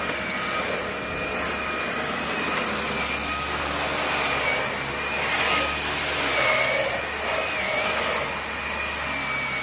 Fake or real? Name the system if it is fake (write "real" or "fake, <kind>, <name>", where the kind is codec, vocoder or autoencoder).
real